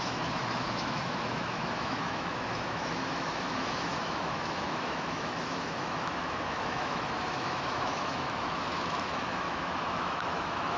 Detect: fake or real fake